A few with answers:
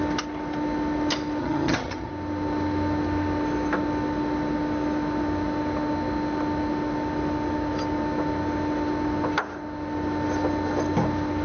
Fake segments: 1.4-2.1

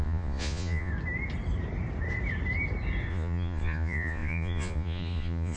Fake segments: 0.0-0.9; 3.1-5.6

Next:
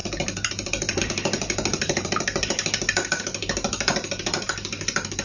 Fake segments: 0.0-5.2

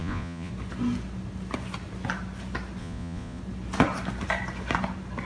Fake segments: 0.0-0.5; 2.8-3.4

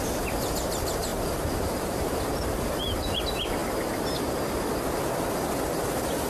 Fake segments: 1.1-3.2

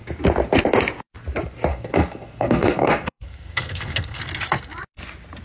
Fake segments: 1.7-4.2

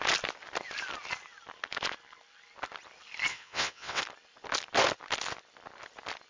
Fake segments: 3.3-4.0

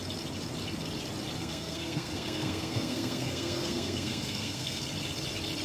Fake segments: 1.4-4.8